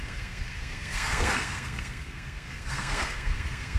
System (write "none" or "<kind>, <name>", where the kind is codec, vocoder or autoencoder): codec, SNAC